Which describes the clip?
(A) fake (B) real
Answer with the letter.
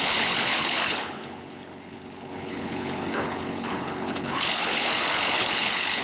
A